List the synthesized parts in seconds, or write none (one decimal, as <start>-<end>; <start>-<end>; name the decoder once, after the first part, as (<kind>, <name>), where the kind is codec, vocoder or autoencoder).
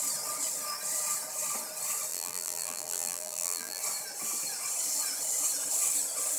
2.1-3.8 (vocoder, BigVGAN v2)